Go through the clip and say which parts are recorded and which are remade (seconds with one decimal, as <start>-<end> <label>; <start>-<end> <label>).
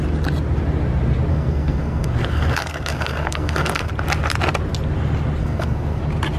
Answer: 0.0-1.3 recorded; 1.3-3.9 remade; 3.9-5.4 recorded; 5.4-6.0 remade; 6.0-6.4 recorded